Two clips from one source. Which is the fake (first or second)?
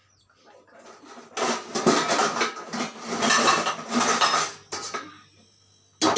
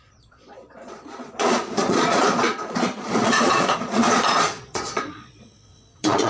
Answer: second